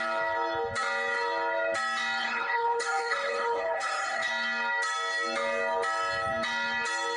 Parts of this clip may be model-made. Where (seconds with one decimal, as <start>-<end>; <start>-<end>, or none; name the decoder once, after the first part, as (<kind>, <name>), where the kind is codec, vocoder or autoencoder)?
2.2-4.3 (codec, HILCodec)